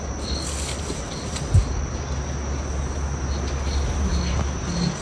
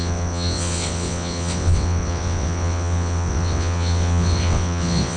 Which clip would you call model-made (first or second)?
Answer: second